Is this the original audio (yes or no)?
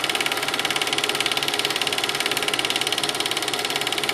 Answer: yes